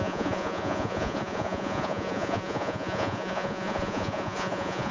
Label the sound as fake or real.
fake